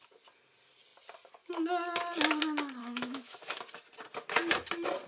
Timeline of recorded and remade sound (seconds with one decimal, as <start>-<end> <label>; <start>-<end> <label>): 0.0-2.8 recorded; 2.8-3.6 remade; 3.6-5.1 recorded